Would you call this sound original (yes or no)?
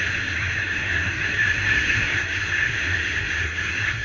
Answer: no